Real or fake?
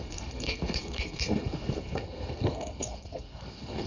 fake